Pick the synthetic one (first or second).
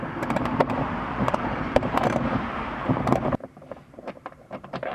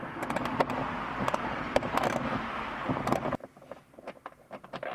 first